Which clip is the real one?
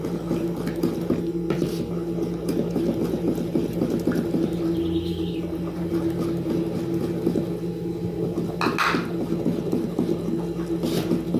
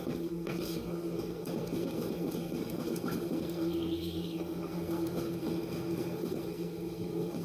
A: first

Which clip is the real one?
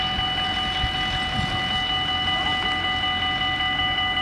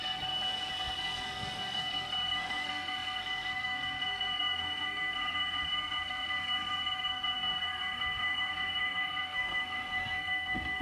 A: first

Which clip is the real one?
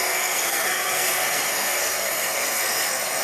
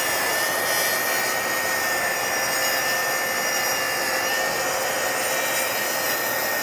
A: second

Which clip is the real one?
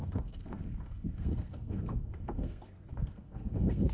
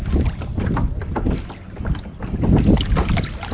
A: second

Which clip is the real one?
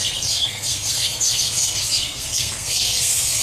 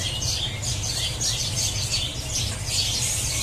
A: second